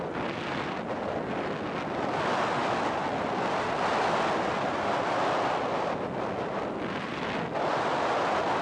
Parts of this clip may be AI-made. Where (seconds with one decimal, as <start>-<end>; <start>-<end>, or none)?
none